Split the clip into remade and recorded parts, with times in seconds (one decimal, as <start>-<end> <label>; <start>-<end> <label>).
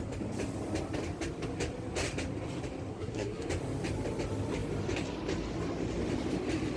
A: 0.0-2.9 recorded; 2.9-3.5 remade; 3.5-6.8 recorded